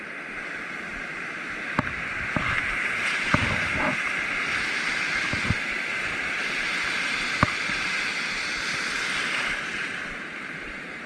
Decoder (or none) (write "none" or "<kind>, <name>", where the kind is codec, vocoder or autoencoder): vocoder, BigVGAN v2